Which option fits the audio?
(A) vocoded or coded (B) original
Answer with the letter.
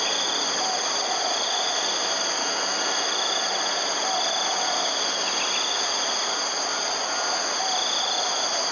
B